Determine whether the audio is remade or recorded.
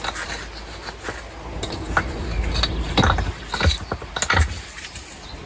recorded